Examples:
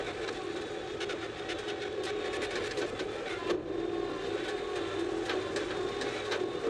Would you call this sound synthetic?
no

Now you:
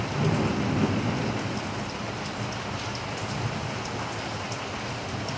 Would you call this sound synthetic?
no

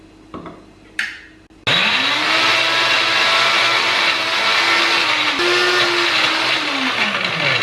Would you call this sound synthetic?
no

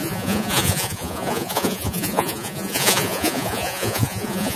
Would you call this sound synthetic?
yes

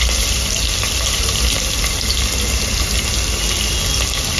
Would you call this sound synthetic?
no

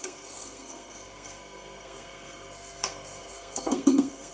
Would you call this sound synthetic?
yes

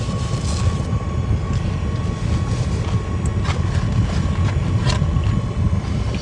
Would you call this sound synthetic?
no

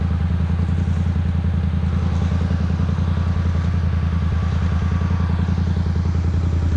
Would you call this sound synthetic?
no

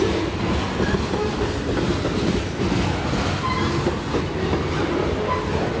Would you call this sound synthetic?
no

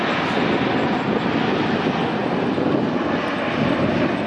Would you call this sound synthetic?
no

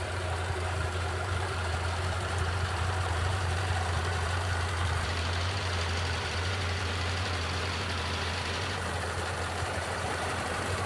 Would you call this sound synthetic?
yes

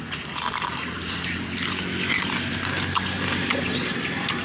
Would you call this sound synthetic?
no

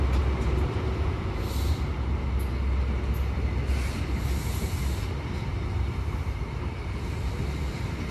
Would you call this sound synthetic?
no